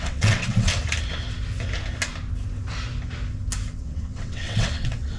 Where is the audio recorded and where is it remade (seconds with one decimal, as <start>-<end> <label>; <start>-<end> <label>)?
0.0-0.7 remade; 0.7-3.8 recorded; 3.8-5.2 remade